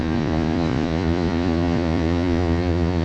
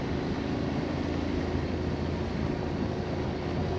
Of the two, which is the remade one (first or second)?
first